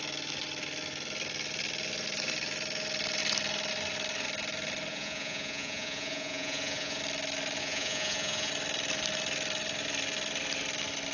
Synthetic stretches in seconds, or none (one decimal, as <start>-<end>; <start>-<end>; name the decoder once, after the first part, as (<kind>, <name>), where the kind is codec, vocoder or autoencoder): 4.9-7.0 (vocoder, Vocos); 7.6-8.5